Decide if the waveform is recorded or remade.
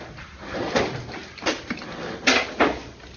recorded